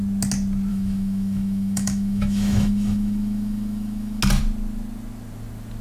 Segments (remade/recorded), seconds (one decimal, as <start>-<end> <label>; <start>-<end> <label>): 0.0-0.7 recorded; 0.7-4.2 remade; 4.2-5.8 recorded